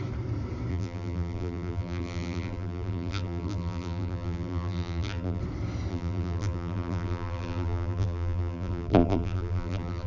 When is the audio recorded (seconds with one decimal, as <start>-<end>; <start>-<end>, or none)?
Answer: 0.0-0.7; 5.4-5.9